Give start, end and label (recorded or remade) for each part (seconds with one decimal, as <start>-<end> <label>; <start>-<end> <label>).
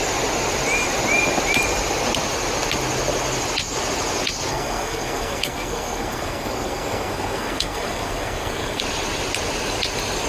0.0-4.5 recorded; 4.5-8.8 remade; 8.8-10.3 recorded